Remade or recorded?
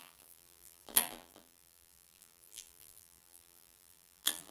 remade